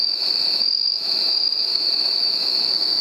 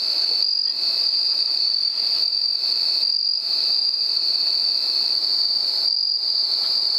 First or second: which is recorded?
second